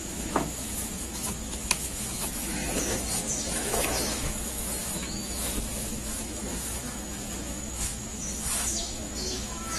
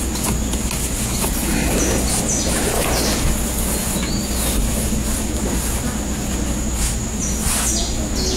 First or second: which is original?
second